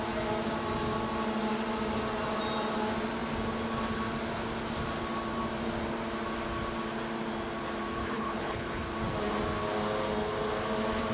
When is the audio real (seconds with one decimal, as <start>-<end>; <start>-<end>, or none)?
0.0-8.0; 8.9-11.1